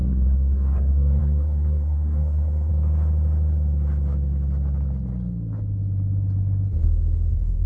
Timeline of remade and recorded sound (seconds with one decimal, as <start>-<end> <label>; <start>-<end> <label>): 0.0-2.7 remade; 2.7-7.3 recorded; 7.3-7.7 remade